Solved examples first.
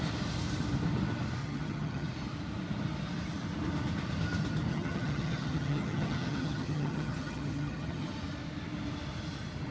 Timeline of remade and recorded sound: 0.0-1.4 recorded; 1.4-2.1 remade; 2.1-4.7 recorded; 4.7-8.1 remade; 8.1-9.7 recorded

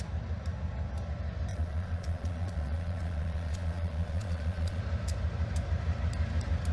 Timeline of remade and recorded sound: 0.0-1.5 recorded; 1.5-4.8 remade; 4.8-6.7 recorded

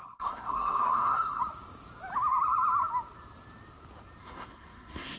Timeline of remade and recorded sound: 0.0-1.4 remade; 1.4-4.2 recorded; 4.2-5.2 remade

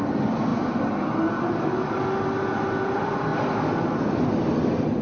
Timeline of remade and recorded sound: 0.0-5.0 recorded